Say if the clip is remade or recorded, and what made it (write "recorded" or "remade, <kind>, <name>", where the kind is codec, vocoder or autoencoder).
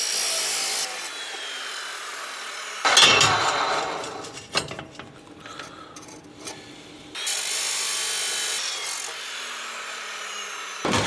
recorded